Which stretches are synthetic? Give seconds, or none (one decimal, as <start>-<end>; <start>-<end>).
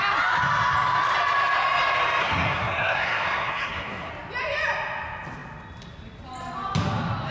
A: 2.2-4.1